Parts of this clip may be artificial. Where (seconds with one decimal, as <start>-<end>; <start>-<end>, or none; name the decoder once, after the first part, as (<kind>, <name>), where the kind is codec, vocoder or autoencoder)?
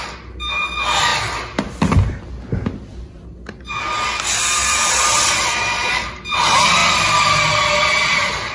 none